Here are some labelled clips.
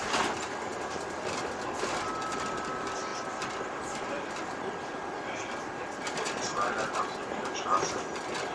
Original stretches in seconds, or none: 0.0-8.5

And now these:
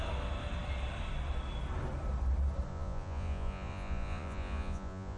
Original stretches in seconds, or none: 0.0-2.7

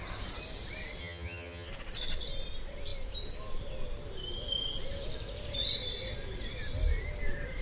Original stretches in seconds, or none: 0.0-1.0; 1.7-7.6